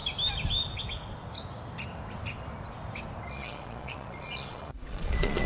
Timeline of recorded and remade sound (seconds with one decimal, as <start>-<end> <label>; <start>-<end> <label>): 0.0-3.3 recorded; 3.3-5.5 remade